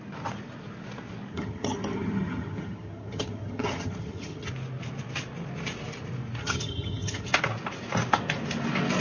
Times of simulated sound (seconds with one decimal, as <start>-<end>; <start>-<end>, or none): 1.3-4.5; 6.4-7.3